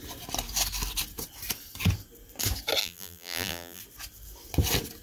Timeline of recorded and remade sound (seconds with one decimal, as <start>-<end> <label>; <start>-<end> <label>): 0.0-2.8 recorded; 2.8-3.8 remade; 3.8-5.0 recorded